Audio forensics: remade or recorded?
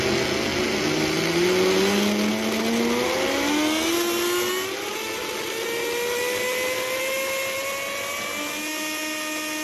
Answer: recorded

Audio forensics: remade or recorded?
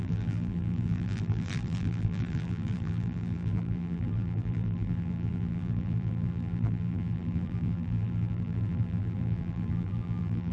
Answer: remade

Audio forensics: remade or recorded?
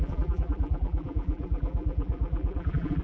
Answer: remade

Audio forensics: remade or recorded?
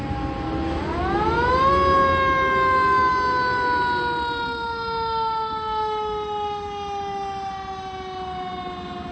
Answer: recorded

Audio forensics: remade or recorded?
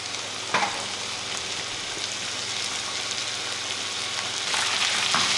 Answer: recorded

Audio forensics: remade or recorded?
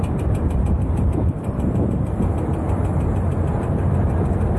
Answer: recorded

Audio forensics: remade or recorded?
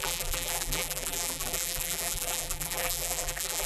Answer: remade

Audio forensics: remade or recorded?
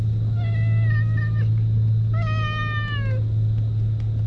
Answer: recorded